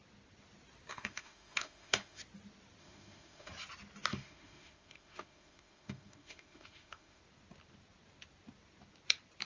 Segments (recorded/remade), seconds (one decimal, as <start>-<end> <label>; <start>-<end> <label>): 0.0-0.9 recorded; 0.9-2.2 remade; 2.2-2.8 recorded; 2.8-3.5 remade; 3.5-4.1 recorded; 4.1-7.2 remade; 7.2-9.5 recorded